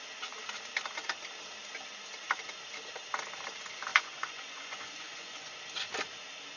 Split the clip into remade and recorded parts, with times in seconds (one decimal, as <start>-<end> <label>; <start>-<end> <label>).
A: 0.0-3.9 recorded; 3.9-5.6 remade; 5.6-6.6 recorded